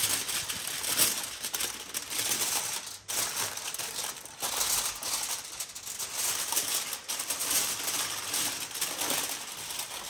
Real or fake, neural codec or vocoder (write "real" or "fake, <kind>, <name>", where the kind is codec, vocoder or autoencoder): real